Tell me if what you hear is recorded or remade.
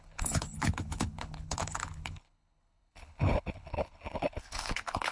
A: remade